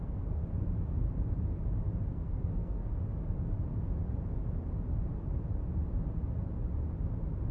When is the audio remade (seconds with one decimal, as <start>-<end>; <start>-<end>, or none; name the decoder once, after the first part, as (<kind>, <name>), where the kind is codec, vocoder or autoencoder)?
0.0-0.4 (codec, SNAC); 2.1-2.9